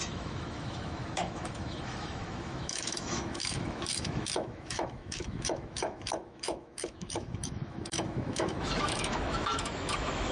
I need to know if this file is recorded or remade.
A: remade